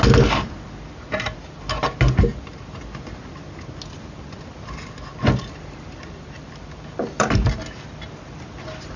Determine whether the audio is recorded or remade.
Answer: recorded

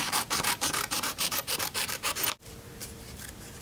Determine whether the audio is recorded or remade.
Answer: remade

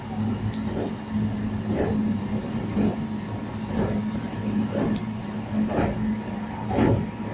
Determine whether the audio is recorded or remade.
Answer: recorded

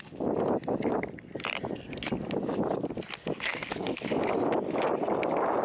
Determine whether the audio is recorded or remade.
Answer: recorded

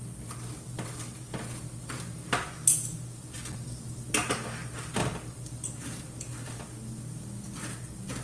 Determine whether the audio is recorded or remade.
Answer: recorded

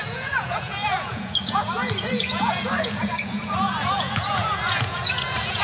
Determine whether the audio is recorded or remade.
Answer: remade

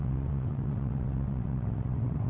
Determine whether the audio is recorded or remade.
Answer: remade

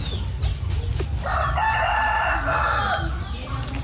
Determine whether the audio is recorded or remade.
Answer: recorded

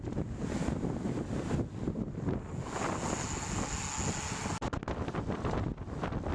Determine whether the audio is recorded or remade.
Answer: recorded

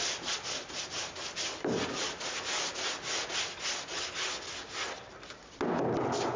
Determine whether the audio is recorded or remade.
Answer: recorded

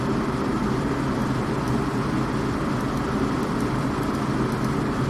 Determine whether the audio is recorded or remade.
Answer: recorded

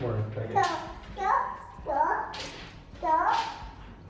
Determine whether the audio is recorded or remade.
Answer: recorded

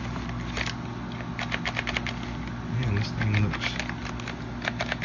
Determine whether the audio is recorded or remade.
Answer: recorded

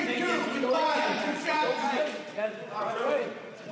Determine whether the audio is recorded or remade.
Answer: remade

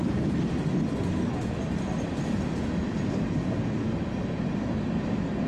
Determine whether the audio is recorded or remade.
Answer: recorded